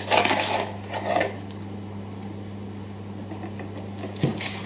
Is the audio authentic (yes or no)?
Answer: yes